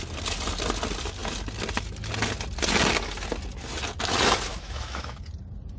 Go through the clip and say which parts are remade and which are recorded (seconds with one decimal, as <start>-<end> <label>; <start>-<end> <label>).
0.0-4.5 recorded; 4.5-5.2 remade; 5.2-5.8 recorded